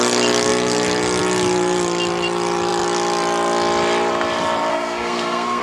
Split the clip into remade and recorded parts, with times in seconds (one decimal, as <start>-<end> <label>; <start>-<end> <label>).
0.0-4.7 recorded; 4.7-5.6 remade